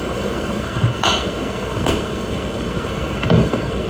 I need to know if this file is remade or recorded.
remade